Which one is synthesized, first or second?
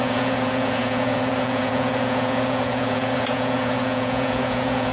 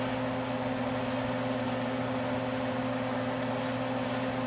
first